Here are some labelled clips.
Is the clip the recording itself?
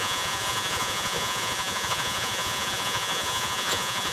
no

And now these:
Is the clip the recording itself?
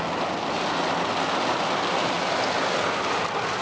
yes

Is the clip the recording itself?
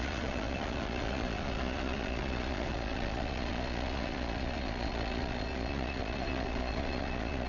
no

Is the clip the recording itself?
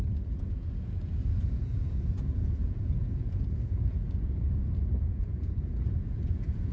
no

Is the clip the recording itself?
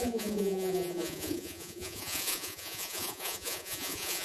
no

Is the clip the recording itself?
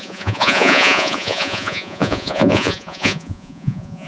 no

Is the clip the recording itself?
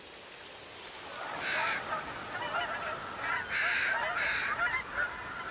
yes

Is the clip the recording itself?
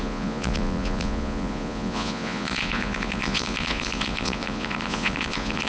no